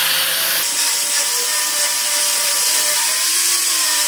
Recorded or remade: remade